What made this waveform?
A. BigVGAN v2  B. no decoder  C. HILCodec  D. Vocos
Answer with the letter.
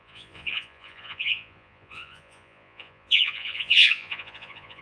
D